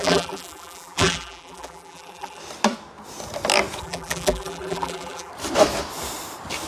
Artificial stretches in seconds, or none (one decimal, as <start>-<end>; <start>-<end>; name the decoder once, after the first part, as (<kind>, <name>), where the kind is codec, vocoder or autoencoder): 0.0-2.4 (vocoder, BigVGAN v2); 3.8-5.3